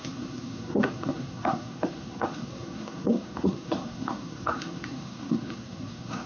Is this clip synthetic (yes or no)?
yes